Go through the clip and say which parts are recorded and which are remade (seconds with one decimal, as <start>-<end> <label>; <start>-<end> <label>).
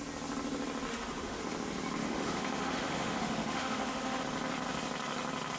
0.0-0.9 recorded; 0.9-1.4 remade; 1.4-2.0 recorded; 2.0-4.2 remade; 4.2-5.6 recorded